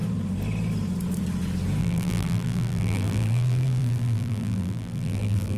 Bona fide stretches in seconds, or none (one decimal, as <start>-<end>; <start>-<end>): 0.0-1.8